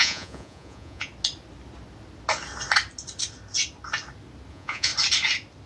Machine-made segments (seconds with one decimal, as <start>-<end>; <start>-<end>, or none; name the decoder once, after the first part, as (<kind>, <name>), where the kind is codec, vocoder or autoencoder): 0.0-1.1 (vocoder, Vocos); 4.5-4.9